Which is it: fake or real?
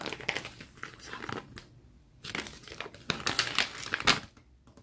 real